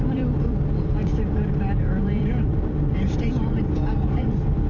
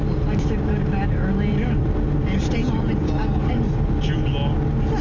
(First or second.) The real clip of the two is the second